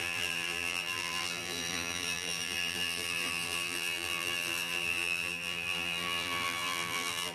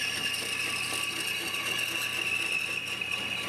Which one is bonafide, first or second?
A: second